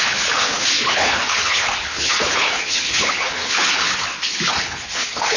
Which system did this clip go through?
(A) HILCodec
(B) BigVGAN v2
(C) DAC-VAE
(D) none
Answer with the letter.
A